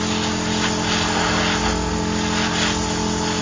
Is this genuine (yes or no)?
yes